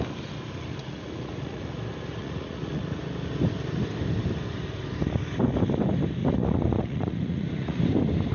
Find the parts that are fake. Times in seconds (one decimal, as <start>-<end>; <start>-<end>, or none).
0.8-1.8; 2.2-3.0; 6.2-7.8